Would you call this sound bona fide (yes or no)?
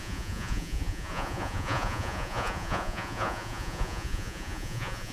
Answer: no